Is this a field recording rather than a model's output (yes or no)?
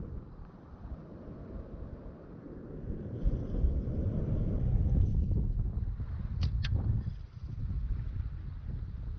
yes